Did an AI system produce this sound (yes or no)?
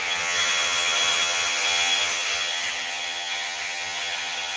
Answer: yes